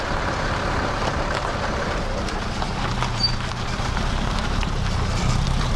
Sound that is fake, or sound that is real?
fake